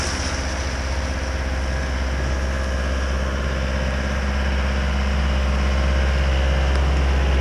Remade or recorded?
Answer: recorded